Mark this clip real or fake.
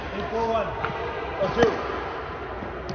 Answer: real